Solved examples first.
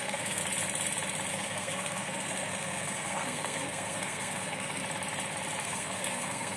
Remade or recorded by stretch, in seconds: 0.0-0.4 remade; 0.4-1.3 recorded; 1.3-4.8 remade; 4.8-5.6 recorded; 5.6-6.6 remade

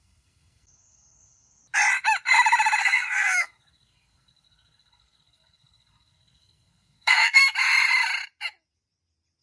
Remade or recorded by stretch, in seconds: 0.0-1.6 remade; 1.6-2.8 recorded; 2.8-7.4 remade; 7.4-9.4 recorded

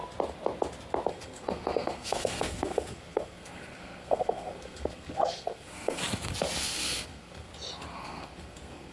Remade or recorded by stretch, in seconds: 0.0-1.1 recorded; 1.1-6.0 remade; 6.0-6.6 recorded; 6.6-7.5 remade; 7.5-8.0 recorded; 8.0-8.9 remade

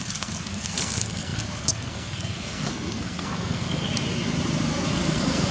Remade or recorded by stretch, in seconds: 0.0-3.9 remade; 3.9-4.9 recorded; 4.9-5.5 remade

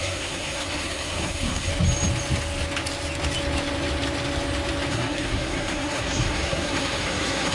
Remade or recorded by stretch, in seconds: 0.0-1.7 remade; 1.7-4.9 recorded; 4.9-7.5 remade

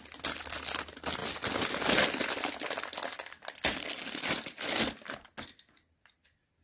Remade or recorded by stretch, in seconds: 0.0-6.6 recorded

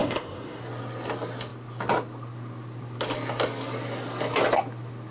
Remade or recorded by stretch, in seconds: 0.0-0.6 remade; 0.6-5.1 recorded